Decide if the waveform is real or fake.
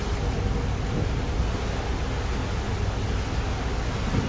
real